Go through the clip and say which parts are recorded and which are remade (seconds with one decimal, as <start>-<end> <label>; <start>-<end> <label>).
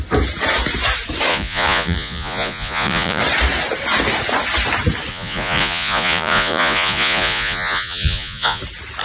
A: 0.0-1.3 recorded; 1.3-3.2 remade; 3.2-5.1 recorded; 5.1-8.6 remade; 8.6-9.0 recorded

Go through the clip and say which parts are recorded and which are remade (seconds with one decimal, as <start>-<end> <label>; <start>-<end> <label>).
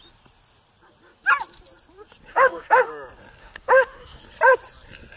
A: 0.0-2.3 recorded; 2.3-2.9 remade; 2.9-3.4 recorded; 3.4-4.2 remade; 4.2-5.2 recorded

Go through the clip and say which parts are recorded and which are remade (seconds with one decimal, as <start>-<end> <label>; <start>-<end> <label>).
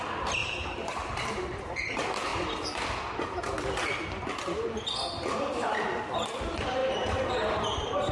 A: 0.0-0.4 recorded; 0.4-1.8 remade; 1.8-6.8 recorded; 6.8-8.1 remade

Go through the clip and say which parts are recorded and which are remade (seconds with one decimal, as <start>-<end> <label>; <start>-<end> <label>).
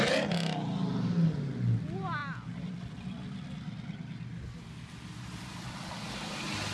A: 0.0-6.7 recorded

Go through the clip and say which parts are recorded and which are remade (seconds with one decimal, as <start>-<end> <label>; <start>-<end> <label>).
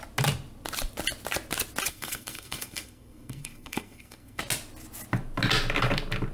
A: 0.0-1.9 recorded; 1.9-4.4 remade; 4.4-6.3 recorded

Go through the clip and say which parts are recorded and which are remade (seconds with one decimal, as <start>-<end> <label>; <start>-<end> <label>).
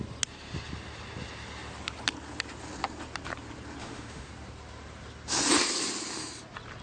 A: 0.0-3.8 recorded; 3.8-4.3 remade; 4.3-6.8 recorded